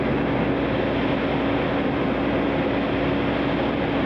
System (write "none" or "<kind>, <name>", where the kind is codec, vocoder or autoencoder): none